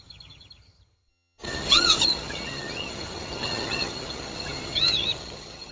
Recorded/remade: remade